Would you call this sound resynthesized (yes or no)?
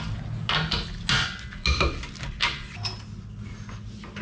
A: no